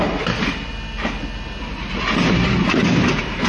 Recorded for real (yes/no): yes